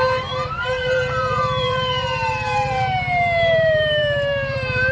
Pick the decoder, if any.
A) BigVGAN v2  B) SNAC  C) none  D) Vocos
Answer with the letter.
A